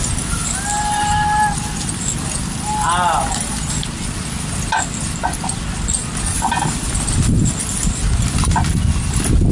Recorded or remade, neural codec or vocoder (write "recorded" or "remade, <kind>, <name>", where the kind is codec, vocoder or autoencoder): recorded